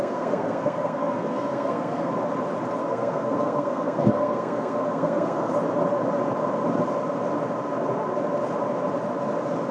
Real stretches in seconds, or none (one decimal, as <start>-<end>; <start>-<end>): 2.1-2.8; 5.5-9.7